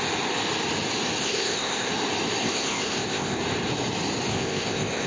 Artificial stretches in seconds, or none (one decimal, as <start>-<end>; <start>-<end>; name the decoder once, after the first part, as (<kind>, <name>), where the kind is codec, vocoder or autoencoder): 1.2-1.9 (codec, ZipCodec); 2.4-3.4; 4.3-5.1